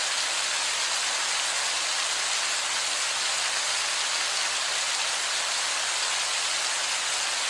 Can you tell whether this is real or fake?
real